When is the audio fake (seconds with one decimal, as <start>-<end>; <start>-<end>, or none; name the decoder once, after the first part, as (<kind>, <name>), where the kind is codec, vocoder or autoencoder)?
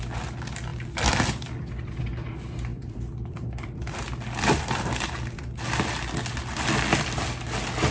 0.7-2.0 (vocoder, BigVGAN v2); 2.7-5.4